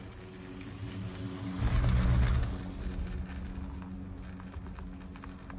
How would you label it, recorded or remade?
recorded